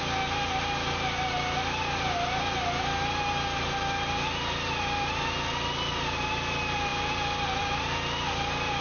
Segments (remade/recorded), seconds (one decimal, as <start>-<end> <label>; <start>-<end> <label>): 0.0-8.8 recorded